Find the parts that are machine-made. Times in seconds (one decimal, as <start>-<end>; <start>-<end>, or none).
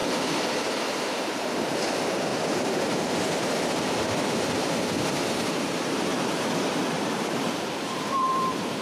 0.5-6.1; 7.3-8.8